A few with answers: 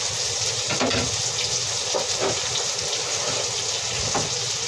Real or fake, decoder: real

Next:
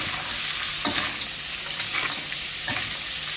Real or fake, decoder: real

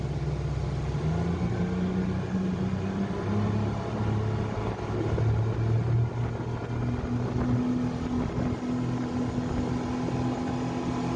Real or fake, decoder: real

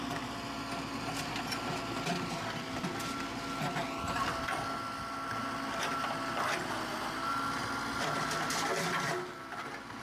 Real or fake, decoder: real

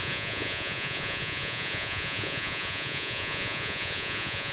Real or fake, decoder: fake, vocoder, Vocos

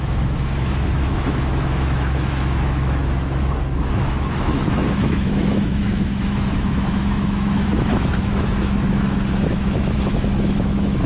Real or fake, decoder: fake, autoencoder, DAC-VAE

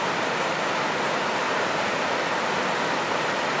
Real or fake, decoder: real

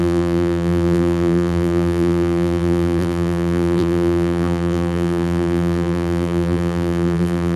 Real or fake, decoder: fake, vocoder, BigVGAN v2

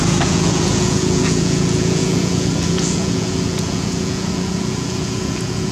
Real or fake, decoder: fake, vocoder, Vocos